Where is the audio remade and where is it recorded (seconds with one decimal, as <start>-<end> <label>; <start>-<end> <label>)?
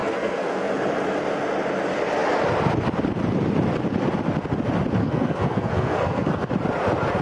0.0-0.7 remade; 0.7-5.0 recorded; 5.0-6.5 remade; 6.5-7.2 recorded